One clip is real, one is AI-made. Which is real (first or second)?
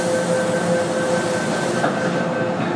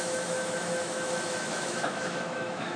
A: first